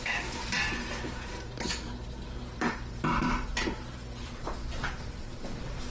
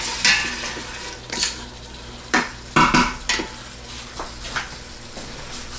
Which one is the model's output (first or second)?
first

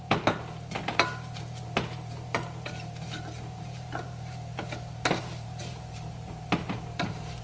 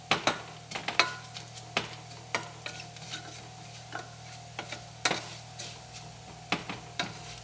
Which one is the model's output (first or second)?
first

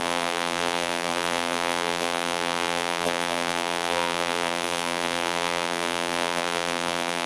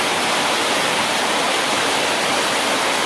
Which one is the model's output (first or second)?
first